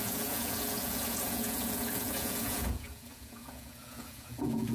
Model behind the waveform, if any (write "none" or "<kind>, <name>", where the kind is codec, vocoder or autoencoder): vocoder, Vocos